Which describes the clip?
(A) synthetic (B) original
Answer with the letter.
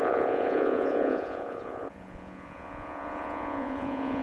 A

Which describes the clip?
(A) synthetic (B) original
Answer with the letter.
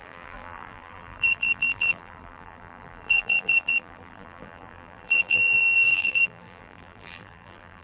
A